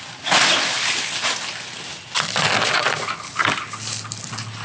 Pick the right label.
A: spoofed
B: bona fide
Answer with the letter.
B